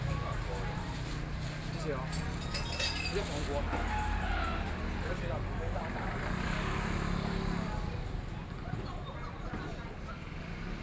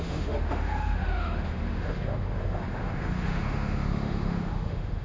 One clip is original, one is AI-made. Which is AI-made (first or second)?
second